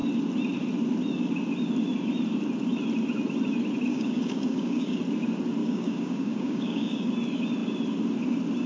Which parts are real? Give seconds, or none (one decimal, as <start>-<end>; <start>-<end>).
0.0-3.9; 5.0-5.6; 7.1-8.7